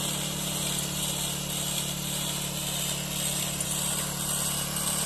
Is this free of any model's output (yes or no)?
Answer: yes